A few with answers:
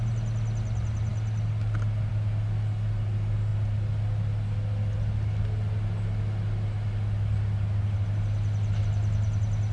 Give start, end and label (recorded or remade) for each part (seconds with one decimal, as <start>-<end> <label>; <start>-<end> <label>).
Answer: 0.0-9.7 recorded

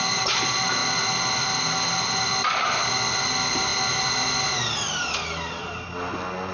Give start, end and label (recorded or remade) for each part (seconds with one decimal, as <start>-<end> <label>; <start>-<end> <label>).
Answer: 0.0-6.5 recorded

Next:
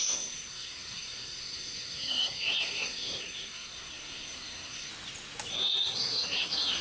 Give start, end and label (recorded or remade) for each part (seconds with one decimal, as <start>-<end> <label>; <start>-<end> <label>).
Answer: 0.0-4.9 remade; 4.9-5.5 recorded; 5.5-6.8 remade

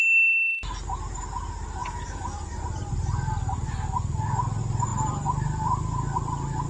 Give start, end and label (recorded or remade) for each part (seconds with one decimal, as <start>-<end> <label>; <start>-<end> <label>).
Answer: 0.0-1.8 recorded; 1.8-2.5 remade; 2.5-6.7 recorded